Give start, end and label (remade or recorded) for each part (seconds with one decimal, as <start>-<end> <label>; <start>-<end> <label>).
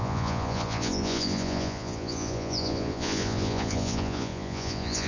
0.0-5.1 remade